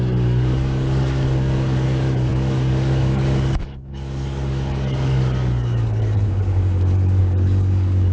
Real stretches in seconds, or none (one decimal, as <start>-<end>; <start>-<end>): none